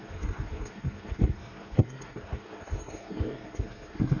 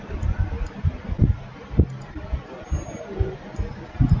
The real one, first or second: second